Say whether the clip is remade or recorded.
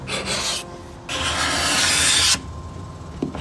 recorded